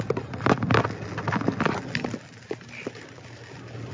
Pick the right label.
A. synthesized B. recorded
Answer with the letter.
B